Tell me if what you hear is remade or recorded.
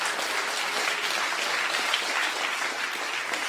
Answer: recorded